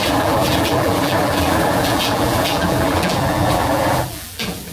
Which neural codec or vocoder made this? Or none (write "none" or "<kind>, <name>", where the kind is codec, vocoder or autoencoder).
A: vocoder, BigVGAN v2